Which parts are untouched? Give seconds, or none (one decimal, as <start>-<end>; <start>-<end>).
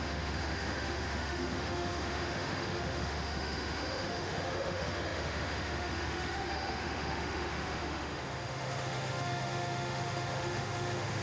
none